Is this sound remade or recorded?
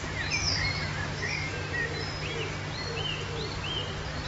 remade